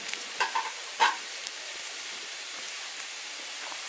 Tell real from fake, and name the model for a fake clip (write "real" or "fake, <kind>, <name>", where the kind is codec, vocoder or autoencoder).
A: fake, vocoder, BigVGAN v2